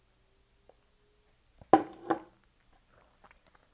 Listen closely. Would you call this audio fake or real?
real